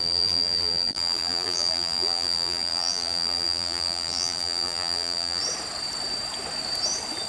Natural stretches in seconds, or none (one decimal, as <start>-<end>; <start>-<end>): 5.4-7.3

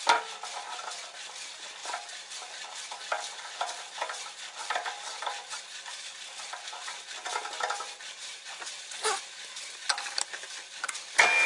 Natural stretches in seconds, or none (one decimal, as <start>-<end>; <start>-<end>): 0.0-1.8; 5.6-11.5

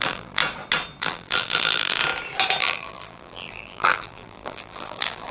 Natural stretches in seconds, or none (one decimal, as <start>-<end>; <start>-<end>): 0.4-1.0; 2.0-2.6